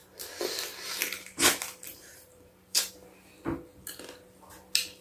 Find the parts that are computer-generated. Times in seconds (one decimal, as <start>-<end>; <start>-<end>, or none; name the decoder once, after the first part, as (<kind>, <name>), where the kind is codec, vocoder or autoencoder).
1.0-2.9 (vocoder, BigVGAN v2)